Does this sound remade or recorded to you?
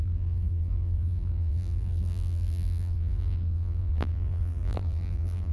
remade